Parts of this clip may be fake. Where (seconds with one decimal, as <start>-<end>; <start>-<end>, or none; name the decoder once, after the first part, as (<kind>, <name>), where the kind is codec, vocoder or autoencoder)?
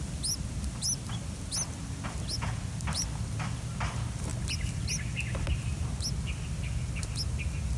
none